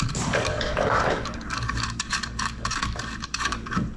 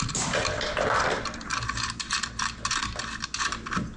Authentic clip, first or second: second